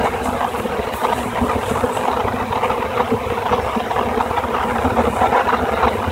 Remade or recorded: recorded